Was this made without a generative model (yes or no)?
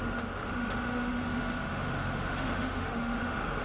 no